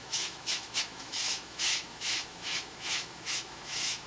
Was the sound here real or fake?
fake